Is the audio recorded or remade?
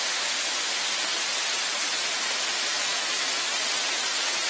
recorded